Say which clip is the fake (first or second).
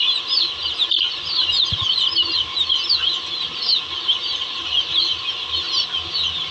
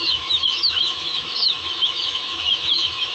second